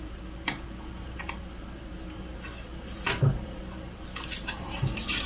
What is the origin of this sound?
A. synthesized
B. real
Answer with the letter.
A